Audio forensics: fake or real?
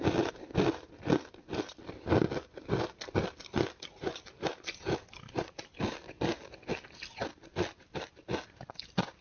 real